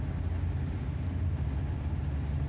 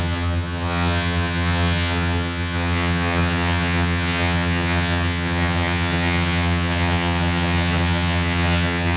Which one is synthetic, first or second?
second